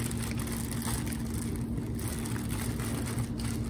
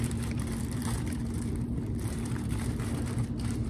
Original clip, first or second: first